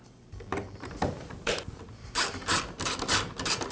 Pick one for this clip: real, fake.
fake